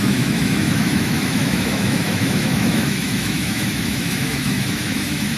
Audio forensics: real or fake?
fake